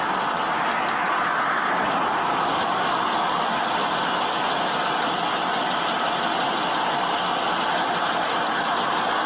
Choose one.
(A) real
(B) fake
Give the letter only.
A